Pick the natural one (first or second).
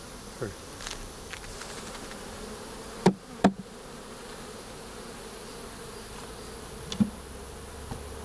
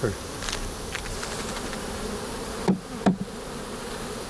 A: first